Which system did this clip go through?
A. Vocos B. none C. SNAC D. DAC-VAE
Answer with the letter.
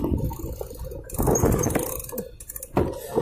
B